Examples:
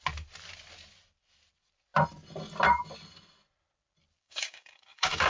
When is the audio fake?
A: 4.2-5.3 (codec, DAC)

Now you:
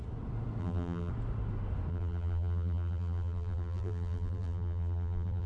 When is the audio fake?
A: 0.6-1.1 (vocoder, BigVGAN v2); 1.9-5.5

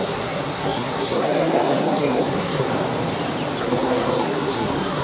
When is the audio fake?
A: 0.0-2.7 (codec, SNAC); 3.6-5.0

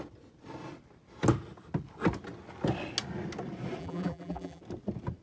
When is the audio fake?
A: 3.8-4.6 (vocoder, BigVGAN v2)

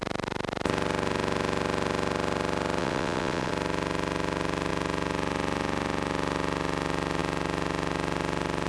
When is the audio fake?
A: 2.8-3.5 (vocoder, WaveNeXt)

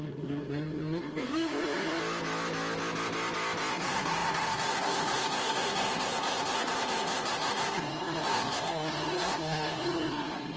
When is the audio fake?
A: 0.0-2.0 (codec, SNAC); 3.7-10.6